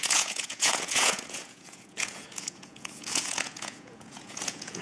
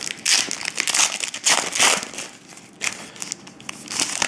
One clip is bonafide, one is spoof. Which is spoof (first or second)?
first